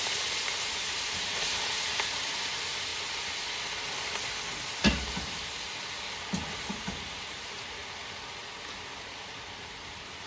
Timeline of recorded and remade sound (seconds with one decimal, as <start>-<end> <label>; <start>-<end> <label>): 0.0-2.9 remade; 2.9-6.5 recorded; 6.5-7.8 remade; 7.8-9.6 recorded; 9.6-10.3 remade